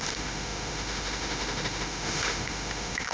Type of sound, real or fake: fake